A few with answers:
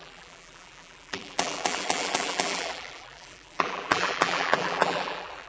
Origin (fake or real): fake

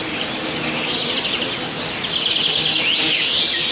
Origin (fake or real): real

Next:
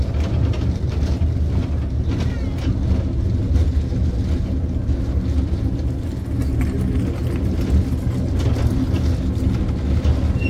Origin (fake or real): real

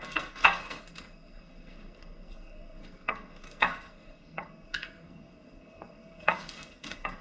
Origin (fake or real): fake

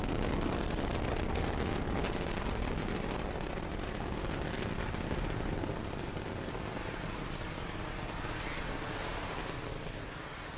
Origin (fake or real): real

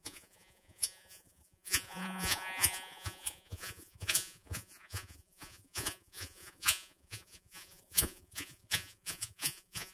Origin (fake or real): fake